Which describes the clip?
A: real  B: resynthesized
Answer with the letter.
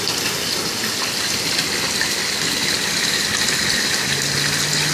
A